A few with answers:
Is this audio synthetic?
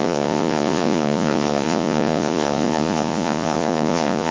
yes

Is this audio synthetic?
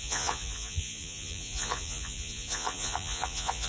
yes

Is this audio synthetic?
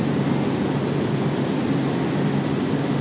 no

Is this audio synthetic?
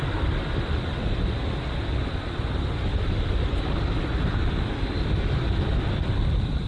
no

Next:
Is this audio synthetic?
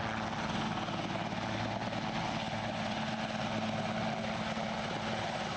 no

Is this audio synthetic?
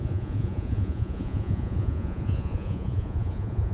yes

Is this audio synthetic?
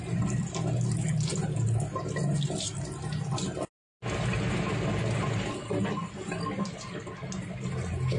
no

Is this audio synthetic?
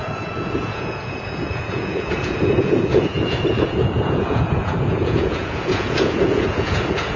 yes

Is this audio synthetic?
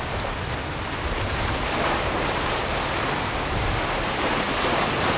no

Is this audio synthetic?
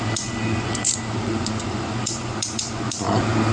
yes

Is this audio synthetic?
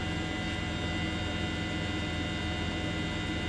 no